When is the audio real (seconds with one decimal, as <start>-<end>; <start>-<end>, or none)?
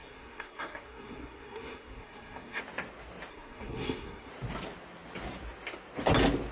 2.6-3.3; 4.3-6.5